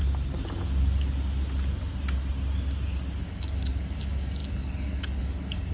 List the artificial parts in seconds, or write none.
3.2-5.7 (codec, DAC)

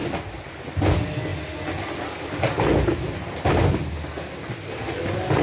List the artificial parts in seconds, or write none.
none

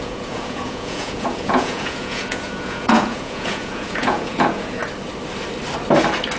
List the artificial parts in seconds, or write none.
0.0-4.8 (vocoder, Vocos)

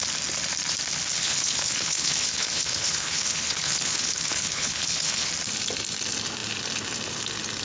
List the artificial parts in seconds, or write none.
1.1-5.3 (codec, HILCodec)

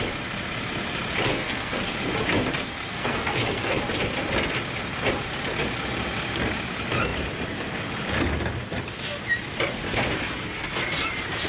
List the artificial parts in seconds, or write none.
1.3-1.8 (codec, SNAC); 2.9-3.8

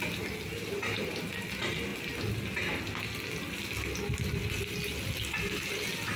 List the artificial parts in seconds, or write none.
none